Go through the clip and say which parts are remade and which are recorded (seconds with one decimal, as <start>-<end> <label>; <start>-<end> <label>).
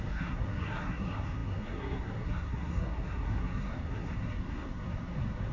0.0-5.5 remade